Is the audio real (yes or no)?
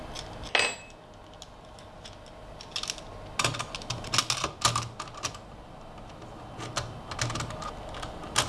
yes